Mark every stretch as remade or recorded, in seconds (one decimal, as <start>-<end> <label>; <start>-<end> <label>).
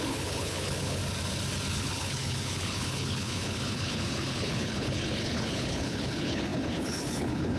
0.0-1.0 remade; 1.0-1.7 recorded; 1.7-7.6 remade